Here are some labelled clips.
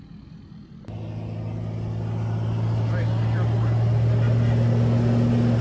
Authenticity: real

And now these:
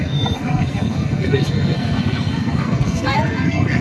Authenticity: fake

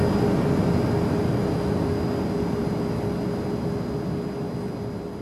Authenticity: real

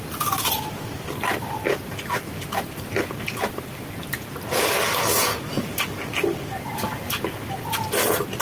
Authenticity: real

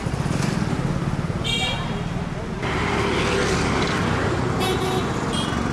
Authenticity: real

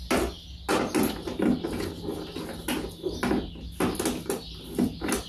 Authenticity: real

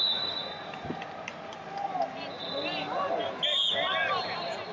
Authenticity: real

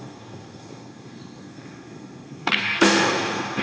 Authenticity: fake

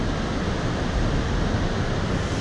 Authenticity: real